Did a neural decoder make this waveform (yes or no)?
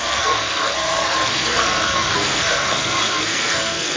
yes